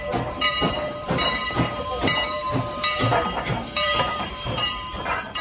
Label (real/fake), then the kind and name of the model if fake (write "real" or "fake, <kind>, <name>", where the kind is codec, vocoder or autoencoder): fake, vocoder, BigVGAN v2